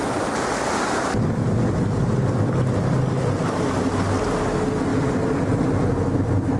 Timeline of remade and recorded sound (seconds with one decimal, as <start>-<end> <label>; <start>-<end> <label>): 0.0-6.6 recorded